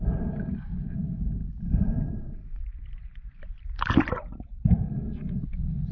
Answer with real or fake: fake